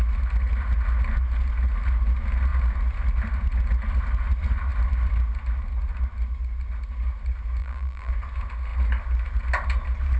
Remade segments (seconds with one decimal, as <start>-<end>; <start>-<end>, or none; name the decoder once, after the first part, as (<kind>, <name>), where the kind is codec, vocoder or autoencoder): 7.6-8.1 (vocoder, BigVGAN v2)